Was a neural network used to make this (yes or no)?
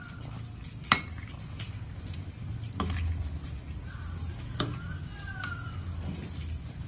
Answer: no